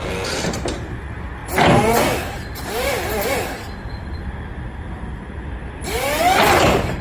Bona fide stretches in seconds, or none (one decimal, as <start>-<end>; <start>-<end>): 0.0-5.1; 5.6-7.0